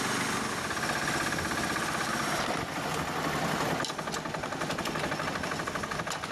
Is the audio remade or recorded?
recorded